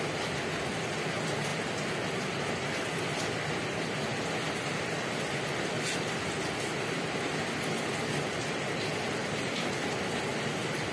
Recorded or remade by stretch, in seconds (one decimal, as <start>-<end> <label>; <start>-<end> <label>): 0.0-10.9 recorded